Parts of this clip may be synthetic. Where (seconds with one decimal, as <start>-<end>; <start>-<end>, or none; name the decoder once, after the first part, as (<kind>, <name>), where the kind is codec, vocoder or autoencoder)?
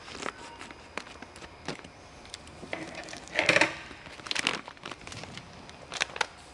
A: 1.7-3.3 (vocoder, BigVGAN v2); 4.5-5.0